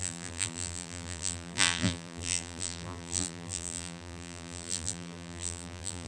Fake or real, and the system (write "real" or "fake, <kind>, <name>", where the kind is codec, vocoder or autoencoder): fake, vocoder, BigVGAN v2